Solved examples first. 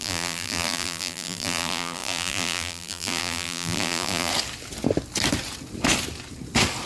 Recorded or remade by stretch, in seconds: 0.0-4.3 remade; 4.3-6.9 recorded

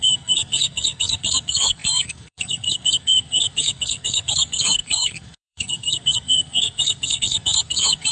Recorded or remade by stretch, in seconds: 0.0-8.1 remade

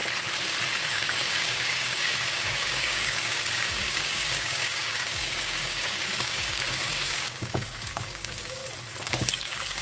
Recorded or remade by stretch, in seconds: 0.0-0.9 recorded; 0.9-8.6 remade; 8.6-9.1 recorded; 9.1-9.8 remade

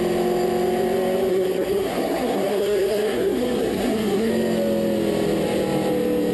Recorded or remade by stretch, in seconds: 0.0-1.3 recorded; 1.3-4.3 remade; 4.3-6.3 recorded

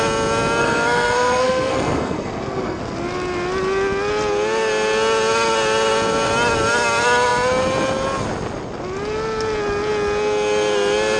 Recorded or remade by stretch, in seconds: 0.0-0.6 recorded; 0.6-2.8 remade; 2.8-11.2 recorded

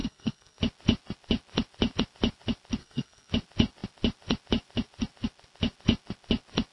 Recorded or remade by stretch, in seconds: 0.0-0.6 remade; 0.6-2.8 recorded; 2.8-3.3 remade; 3.3-6.7 recorded